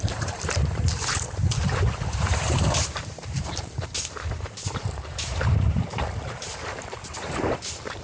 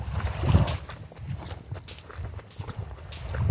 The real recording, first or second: second